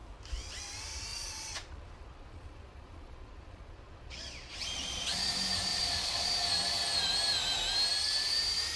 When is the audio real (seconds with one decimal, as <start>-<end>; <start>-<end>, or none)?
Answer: 0.0-1.1; 5.3-5.7; 6.3-8.8